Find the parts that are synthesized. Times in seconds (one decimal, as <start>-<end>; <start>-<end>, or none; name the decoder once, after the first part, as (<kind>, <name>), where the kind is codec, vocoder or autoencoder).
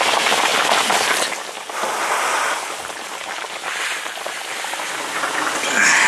none